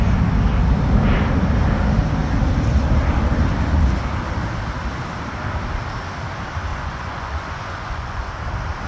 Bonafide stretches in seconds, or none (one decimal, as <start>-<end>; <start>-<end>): 0.0-6.7; 8.3-8.9

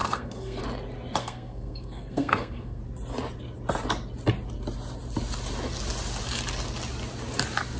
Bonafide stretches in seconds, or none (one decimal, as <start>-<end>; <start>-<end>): 0.6-1.2; 2.8-7.8

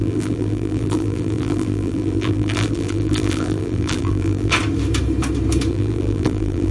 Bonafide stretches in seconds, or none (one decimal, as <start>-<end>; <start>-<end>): 4.5-5.7

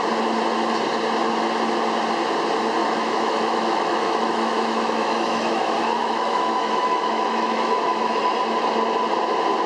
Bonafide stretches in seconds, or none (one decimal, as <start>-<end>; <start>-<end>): 0.0-2.8; 5.6-6.0; 8.2-9.7

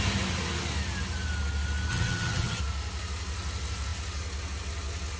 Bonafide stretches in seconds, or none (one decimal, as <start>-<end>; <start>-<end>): 0.0-1.9; 2.6-5.2